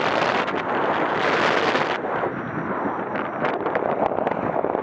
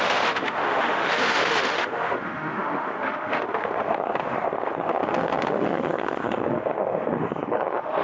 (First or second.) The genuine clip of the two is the first